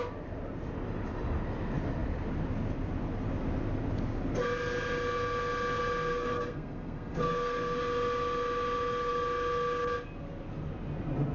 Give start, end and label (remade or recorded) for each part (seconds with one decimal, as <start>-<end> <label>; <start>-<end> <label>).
0.0-6.1 recorded; 6.1-7.8 remade; 7.8-11.3 recorded